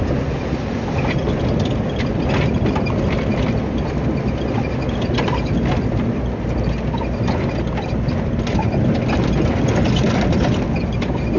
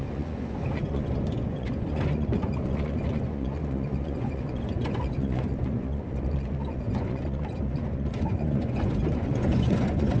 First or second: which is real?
first